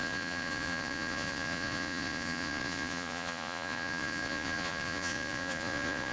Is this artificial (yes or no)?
yes